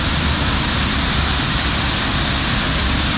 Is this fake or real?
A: real